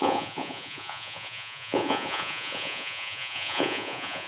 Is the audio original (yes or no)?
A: no